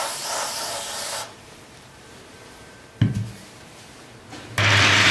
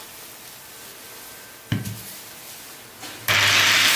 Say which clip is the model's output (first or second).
first